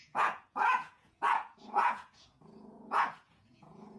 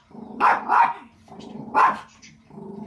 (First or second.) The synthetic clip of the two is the first